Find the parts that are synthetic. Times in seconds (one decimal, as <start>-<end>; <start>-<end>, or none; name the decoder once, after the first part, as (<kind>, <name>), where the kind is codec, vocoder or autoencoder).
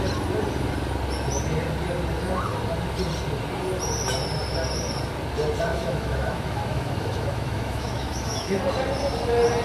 5.7-8.6 (autoencoder, DAC-VAE)